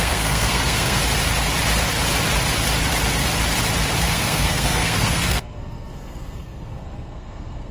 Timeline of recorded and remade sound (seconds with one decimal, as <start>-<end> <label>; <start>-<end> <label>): 0.0-1.0 remade; 1.0-4.0 recorded; 4.0-7.7 remade